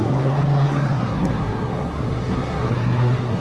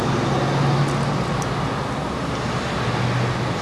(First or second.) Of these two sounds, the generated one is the first